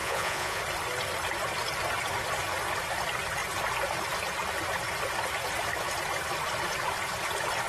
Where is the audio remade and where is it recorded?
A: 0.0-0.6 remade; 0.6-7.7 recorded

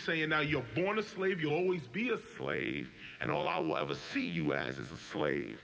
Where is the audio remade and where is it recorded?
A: 0.0-2.3 recorded; 2.3-5.6 remade

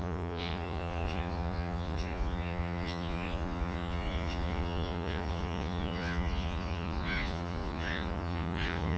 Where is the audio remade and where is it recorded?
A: 0.0-9.0 remade